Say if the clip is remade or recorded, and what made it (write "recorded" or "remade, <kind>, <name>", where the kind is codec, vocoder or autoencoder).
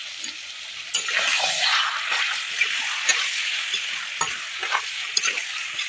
recorded